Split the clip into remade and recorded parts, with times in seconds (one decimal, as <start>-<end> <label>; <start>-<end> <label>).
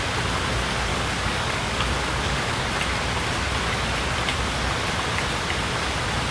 0.0-0.9 recorded; 0.9-2.7 remade; 2.7-6.3 recorded